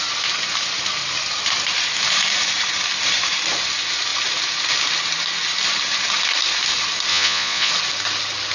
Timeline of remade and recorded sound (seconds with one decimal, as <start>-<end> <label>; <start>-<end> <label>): 0.0-7.1 recorded; 7.1-7.7 remade; 7.7-8.5 recorded

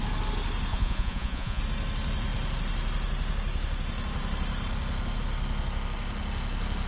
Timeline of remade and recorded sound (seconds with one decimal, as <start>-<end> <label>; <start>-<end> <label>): 0.0-0.7 recorded; 0.7-1.6 remade; 1.6-6.9 recorded